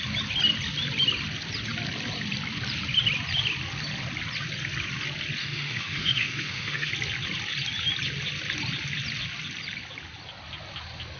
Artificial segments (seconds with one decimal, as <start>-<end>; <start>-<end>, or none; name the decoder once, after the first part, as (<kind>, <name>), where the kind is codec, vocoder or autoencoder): 5.4-6.9 (autoencoder, DAC-VAE)